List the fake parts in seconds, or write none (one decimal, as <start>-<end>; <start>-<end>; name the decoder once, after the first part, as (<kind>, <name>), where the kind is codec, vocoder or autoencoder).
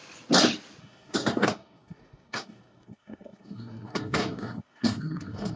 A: 0.8-5.6 (codec, SNAC)